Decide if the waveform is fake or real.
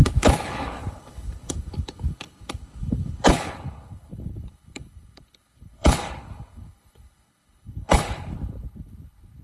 fake